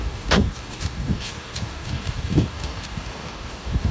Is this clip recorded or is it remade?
remade